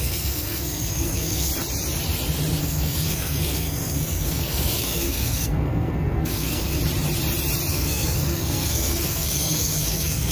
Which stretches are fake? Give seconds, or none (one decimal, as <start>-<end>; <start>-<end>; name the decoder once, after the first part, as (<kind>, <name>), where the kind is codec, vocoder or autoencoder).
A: 0.0-1.5 (codec, SNAC); 2.6-6.8; 7.7-10.3